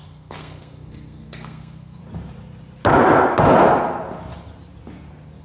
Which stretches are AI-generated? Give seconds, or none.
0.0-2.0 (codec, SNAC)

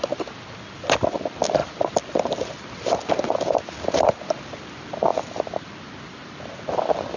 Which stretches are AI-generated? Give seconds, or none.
none

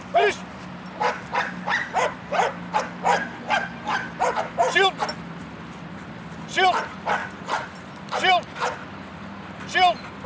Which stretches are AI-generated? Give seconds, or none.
none

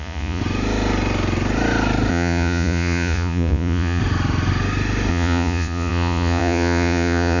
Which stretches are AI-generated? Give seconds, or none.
0.0-0.4 (vocoder, Vocos); 2.1-4.0; 5.1-7.4

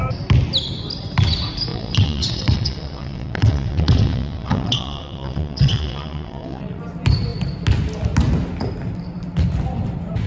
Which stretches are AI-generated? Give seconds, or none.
1.7-6.8 (vocoder, WaveNeXt)

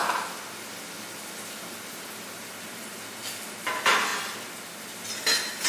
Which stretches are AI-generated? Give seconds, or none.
none